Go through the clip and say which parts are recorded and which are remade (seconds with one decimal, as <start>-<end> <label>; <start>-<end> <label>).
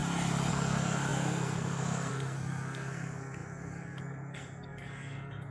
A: 0.0-0.5 recorded; 0.5-5.5 remade